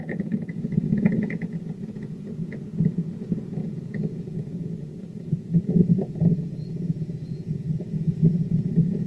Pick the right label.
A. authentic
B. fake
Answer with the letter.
B